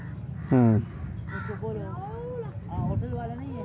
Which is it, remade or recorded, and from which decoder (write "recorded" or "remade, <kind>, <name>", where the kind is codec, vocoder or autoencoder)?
recorded